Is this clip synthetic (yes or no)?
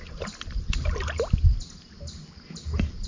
no